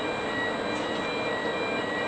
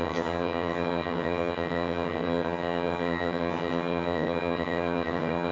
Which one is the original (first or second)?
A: first